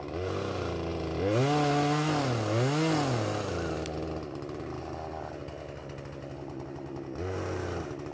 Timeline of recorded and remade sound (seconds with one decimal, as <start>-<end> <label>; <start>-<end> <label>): 0.0-8.1 recorded